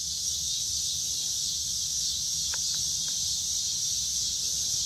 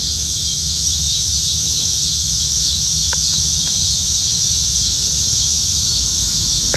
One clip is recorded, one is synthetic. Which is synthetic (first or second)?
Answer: second